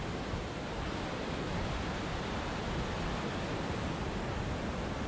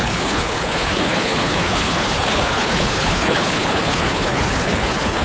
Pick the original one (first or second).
first